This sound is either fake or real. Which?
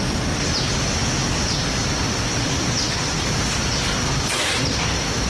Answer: real